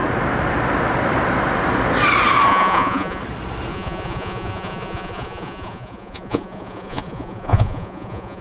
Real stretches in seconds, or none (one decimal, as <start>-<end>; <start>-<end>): 0.0-2.5; 3.2-3.7